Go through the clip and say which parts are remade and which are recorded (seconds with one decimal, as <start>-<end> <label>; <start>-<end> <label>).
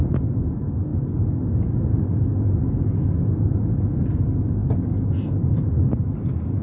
0.0-6.6 recorded